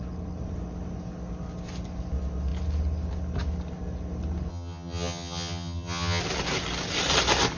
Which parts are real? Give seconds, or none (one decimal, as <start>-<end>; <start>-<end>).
0.0-4.5; 6.2-7.6